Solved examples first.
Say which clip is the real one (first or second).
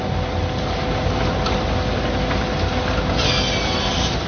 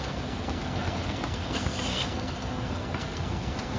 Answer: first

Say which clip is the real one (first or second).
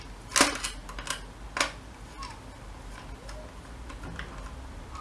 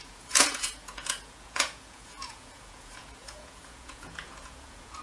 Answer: first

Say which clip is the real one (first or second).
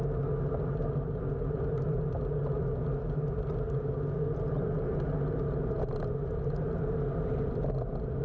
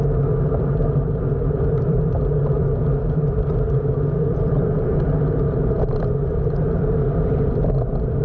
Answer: first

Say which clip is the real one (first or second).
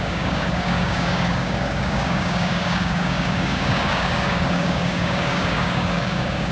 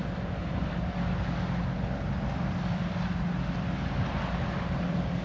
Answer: second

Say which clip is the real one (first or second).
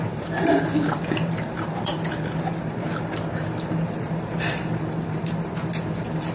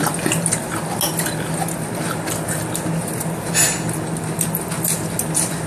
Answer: second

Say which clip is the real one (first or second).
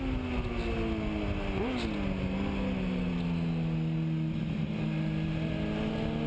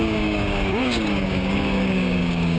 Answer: first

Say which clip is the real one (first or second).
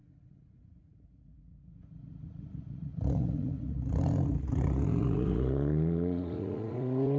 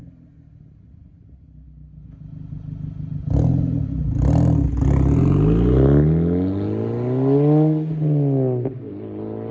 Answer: second